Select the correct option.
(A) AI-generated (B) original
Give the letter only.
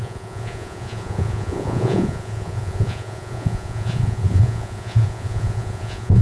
A